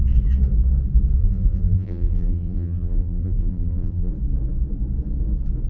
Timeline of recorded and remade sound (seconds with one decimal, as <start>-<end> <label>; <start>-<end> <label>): 0.0-1.2 recorded; 1.2-4.1 remade; 4.1-5.7 recorded